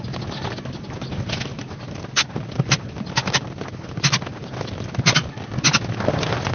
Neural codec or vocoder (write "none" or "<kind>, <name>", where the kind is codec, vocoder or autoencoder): none